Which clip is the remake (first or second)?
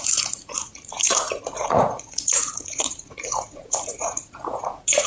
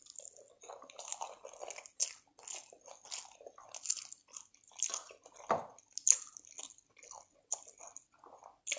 first